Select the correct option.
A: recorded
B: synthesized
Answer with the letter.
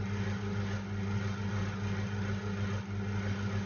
A